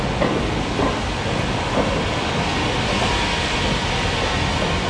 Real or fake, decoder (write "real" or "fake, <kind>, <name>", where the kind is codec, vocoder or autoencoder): real